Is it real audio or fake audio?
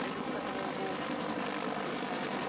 real